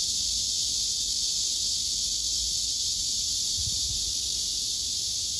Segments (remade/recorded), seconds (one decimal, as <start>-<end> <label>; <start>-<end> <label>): 0.0-3.0 recorded; 3.0-4.1 remade; 4.1-4.7 recorded; 4.7-5.4 remade